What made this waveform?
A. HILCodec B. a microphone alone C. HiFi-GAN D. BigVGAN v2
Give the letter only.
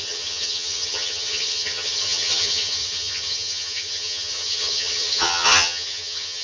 C